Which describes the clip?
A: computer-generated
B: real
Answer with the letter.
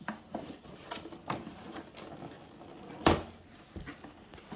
B